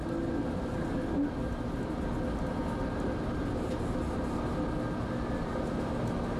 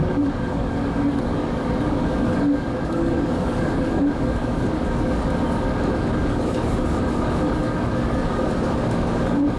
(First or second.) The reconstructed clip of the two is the second